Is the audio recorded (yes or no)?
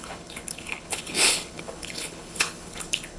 no